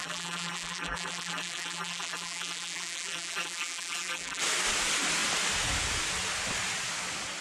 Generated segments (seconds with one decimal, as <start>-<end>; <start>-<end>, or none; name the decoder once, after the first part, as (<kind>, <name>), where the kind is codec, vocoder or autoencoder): 0.0-4.4 (vocoder, BigVGAN v2)